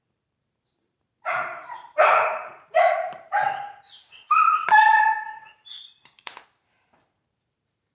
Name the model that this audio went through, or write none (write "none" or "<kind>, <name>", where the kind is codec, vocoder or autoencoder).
vocoder, BigVGAN v2